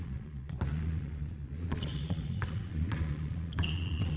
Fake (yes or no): yes